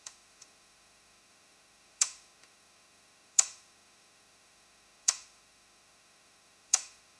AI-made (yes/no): yes